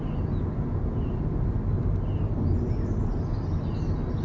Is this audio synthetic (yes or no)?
no